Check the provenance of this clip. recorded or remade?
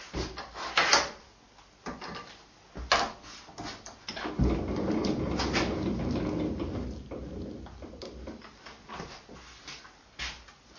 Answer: recorded